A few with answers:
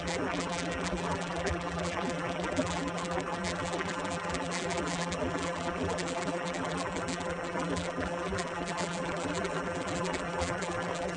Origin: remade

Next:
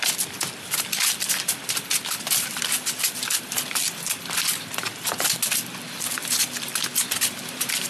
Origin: recorded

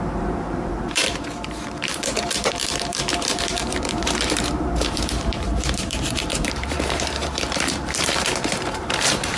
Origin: remade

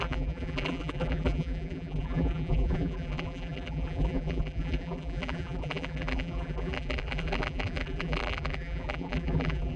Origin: remade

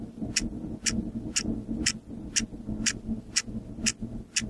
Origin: recorded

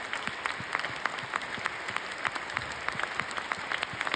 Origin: recorded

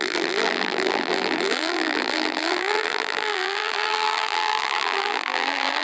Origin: remade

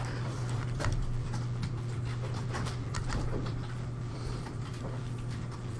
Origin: remade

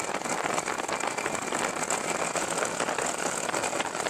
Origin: recorded